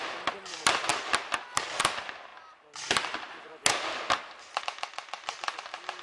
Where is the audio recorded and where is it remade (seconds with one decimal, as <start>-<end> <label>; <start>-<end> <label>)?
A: 0.0-6.0 recorded